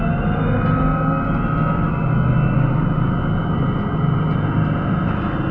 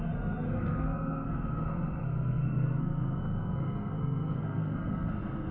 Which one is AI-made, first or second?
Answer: second